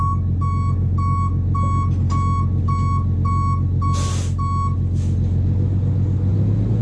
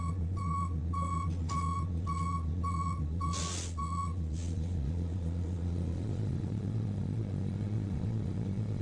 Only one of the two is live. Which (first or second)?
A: first